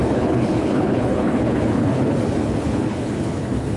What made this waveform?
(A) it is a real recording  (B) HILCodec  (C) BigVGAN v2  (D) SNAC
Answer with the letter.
B